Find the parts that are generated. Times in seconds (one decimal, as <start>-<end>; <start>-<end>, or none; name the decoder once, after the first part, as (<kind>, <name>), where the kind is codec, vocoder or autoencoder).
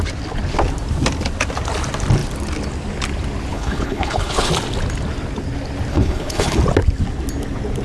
3.5-4.5 (codec, HILCodec); 5.9-6.6